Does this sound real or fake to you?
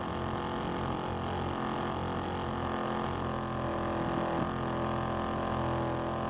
real